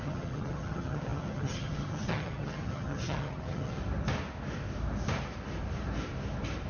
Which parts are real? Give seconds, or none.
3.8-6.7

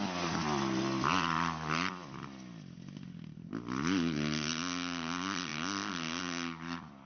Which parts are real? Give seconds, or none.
0.0-7.1

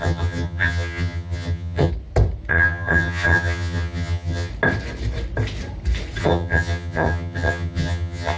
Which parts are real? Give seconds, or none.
1.9-2.5; 4.5-6.2